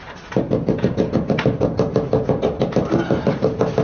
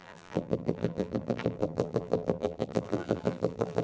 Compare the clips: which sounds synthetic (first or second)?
second